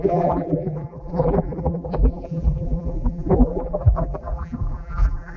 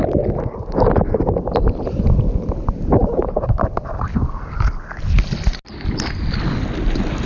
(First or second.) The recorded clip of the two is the second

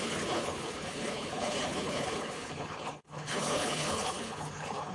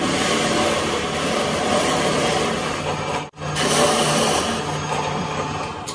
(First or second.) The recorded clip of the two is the second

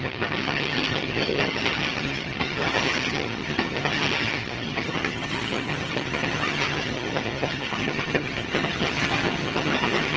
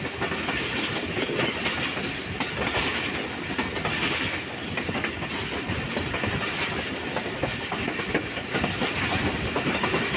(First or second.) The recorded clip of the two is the second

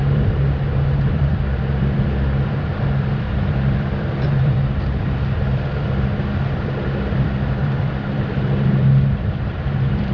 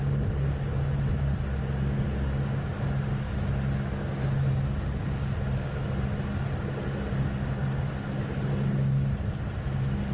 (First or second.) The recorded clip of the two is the second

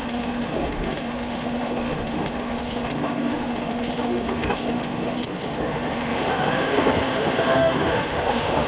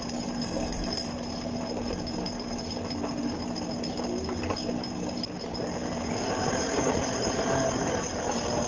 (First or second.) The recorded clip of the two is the second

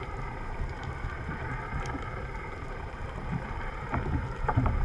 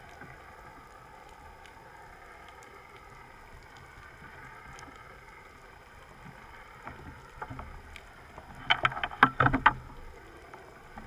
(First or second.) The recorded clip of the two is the second